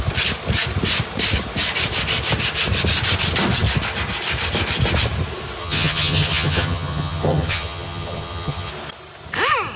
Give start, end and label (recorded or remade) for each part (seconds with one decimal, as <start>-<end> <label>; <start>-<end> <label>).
0.0-5.6 recorded; 5.6-8.7 remade; 8.7-9.8 recorded